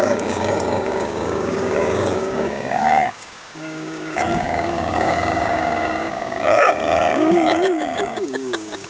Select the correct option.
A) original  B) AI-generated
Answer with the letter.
B